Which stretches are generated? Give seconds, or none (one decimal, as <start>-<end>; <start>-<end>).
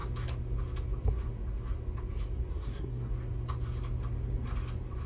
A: 2.5-3.1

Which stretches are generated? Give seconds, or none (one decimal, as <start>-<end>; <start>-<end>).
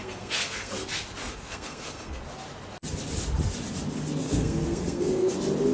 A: 0.0-0.7; 1.2-2.2; 4.2-5.3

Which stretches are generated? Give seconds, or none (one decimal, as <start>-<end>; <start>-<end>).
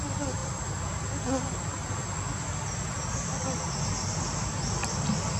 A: none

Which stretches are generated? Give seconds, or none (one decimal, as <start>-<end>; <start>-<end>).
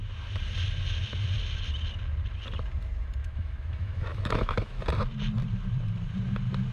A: 3.2-4.8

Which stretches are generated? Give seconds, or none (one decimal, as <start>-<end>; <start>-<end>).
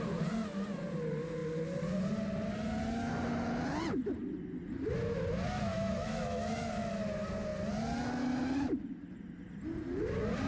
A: 5.7-6.7